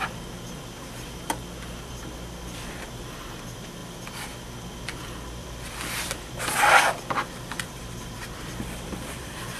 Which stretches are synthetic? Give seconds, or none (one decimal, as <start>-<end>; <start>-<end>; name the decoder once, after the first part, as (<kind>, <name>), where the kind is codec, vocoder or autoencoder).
0.0-9.6 (vocoder, BigVGAN v2)